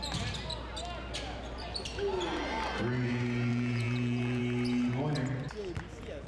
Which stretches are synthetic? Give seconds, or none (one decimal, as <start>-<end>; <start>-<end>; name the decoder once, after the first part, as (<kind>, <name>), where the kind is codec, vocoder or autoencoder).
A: 3.5-4.4 (vocoder, Vocos)